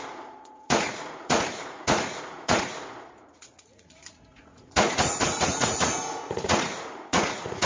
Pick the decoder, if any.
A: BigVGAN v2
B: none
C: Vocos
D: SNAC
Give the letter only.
C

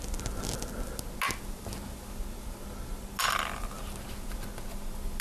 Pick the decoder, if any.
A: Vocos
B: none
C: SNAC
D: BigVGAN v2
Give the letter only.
B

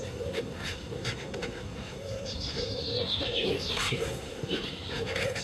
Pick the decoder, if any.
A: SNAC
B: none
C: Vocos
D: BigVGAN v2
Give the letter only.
A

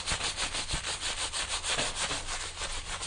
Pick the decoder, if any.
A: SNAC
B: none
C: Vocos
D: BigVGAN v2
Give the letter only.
B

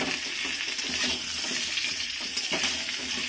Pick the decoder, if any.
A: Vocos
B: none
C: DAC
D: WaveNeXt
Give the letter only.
B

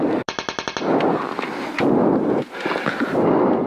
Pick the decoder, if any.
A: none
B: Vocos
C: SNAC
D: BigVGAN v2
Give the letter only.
A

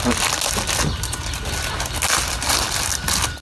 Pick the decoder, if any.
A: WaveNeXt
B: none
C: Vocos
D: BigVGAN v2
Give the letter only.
B